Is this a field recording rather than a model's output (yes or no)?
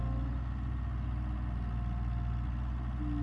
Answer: yes